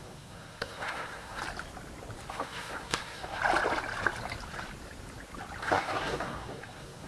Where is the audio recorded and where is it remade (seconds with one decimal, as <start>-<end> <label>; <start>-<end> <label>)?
0.0-1.4 remade; 1.4-2.3 recorded; 2.3-3.4 remade; 3.4-5.6 recorded; 5.6-7.1 remade